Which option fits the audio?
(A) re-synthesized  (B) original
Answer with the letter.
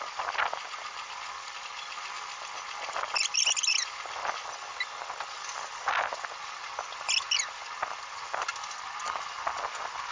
B